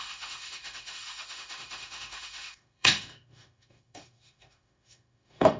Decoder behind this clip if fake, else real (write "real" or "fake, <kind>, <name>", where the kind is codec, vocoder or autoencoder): fake, autoencoder, DAC-VAE